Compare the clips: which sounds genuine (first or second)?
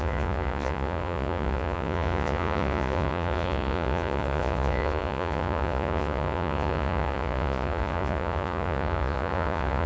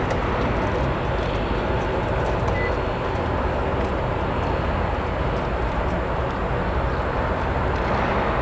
second